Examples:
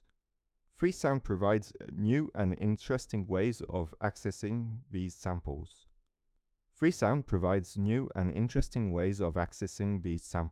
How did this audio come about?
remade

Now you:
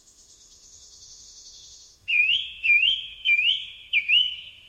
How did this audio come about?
remade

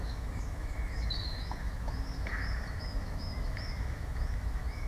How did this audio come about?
remade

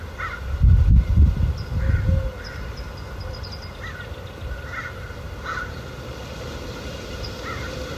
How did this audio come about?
recorded